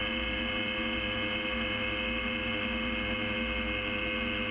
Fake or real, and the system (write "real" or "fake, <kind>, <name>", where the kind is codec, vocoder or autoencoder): real